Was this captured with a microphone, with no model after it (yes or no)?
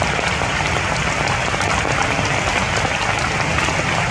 yes